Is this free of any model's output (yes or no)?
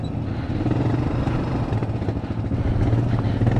yes